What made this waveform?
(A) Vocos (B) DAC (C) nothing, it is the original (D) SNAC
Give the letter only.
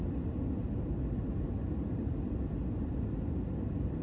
C